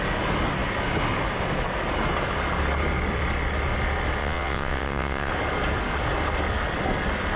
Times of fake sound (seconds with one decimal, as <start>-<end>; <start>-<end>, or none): 4.2-5.3